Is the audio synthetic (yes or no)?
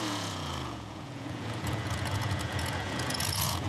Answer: yes